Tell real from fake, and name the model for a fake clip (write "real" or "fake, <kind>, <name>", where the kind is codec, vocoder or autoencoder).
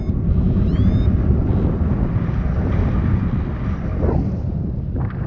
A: real